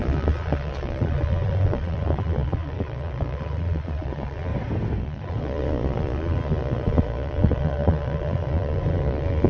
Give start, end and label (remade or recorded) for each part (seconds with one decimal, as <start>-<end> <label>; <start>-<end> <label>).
0.0-4.5 remade; 4.5-5.0 recorded; 5.0-9.5 remade